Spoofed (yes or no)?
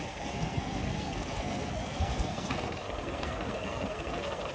yes